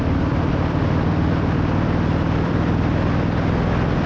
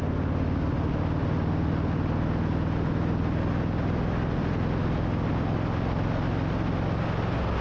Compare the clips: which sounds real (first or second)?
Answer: second